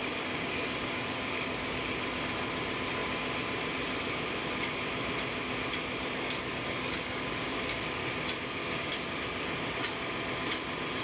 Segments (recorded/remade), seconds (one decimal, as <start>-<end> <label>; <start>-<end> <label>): 0.0-1.8 remade; 1.8-6.1 recorded; 6.1-8.1 remade; 8.1-8.6 recorded; 8.6-9.2 remade; 9.2-11.0 recorded